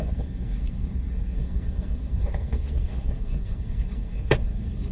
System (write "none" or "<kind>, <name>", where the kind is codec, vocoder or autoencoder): codec, SNAC